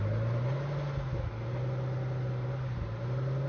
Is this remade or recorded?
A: recorded